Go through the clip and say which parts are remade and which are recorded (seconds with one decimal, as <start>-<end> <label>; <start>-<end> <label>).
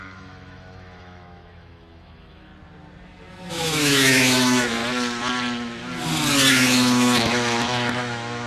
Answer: 0.0-2.5 remade; 2.5-3.5 recorded; 3.5-4.8 remade; 4.8-6.5 recorded; 6.5-8.5 remade